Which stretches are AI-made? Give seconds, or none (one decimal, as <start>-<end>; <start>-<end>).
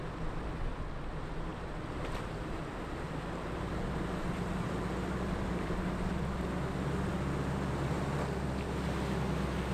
1.5-6.1